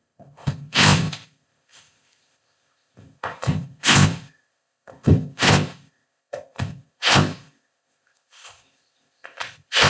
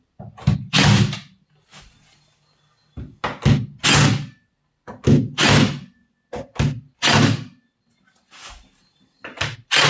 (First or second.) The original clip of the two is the second